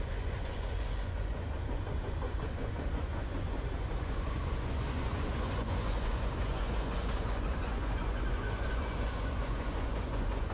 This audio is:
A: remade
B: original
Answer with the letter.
A